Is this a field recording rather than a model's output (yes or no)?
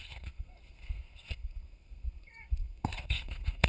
no